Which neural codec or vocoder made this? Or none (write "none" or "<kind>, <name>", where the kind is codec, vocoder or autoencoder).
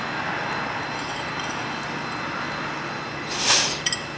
none